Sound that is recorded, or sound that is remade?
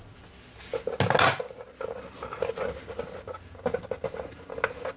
recorded